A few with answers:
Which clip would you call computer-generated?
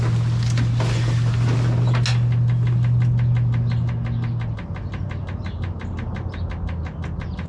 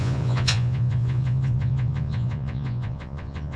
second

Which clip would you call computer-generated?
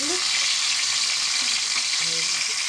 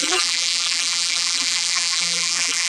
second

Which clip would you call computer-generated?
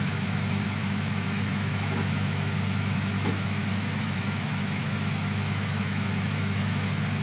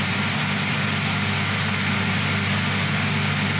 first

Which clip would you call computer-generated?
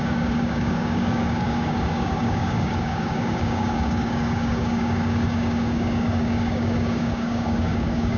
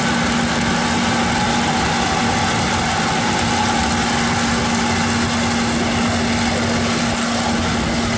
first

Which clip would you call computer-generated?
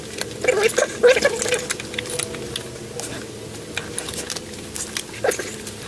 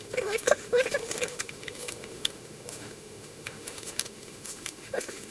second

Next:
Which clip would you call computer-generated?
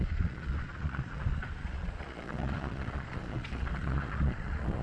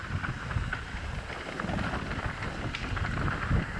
first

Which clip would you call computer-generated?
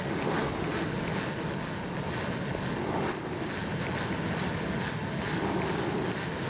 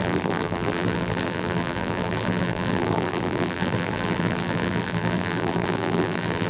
second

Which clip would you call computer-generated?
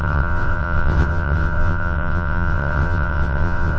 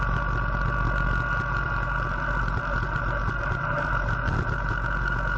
first